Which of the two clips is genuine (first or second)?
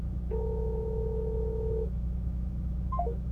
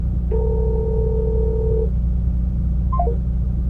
second